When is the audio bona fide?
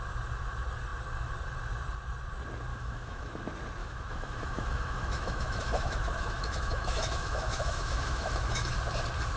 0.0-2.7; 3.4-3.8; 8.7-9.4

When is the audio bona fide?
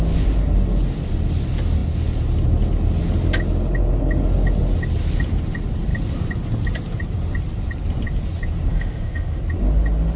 0.0-8.7; 9.4-10.2